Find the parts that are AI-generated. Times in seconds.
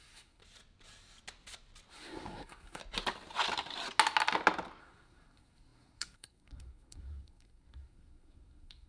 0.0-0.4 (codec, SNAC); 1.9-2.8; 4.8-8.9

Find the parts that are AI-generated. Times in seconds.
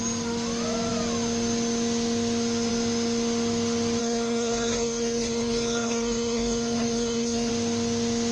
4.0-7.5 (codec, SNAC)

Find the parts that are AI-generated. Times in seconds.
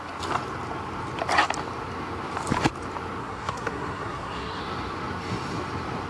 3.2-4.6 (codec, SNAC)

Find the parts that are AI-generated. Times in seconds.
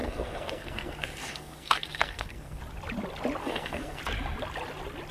0.0-2.6 (codec, SNAC); 3.4-4.0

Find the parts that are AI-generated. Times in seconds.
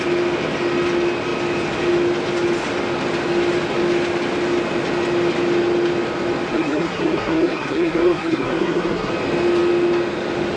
6.5-9.1 (codec, SNAC)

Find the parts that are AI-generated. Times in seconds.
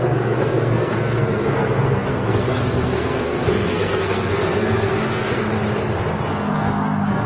0.0-5.4 (codec, SNAC); 6.3-7.3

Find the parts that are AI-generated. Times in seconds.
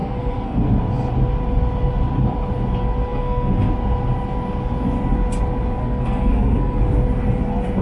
0.0-0.6 (codec, SNAC); 2.8-3.7; 5.8-6.8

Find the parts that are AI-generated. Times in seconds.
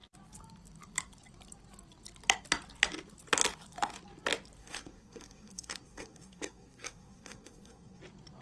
4.6-8.0 (codec, SNAC)